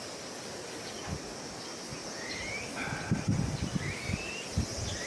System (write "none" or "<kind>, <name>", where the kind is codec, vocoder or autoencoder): none